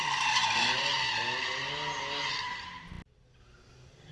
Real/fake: real